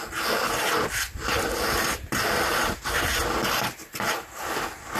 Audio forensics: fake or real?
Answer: real